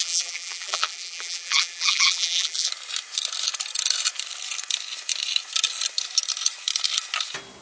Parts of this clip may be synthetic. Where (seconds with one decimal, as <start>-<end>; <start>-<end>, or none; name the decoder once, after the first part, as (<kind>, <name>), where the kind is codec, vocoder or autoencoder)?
0.0-2.7 (vocoder, BigVGAN v2)